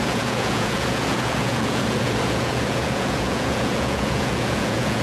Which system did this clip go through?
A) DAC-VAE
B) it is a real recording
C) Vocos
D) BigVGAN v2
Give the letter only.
C